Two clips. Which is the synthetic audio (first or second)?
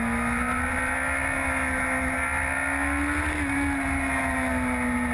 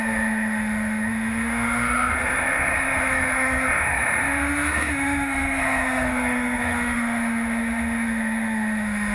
second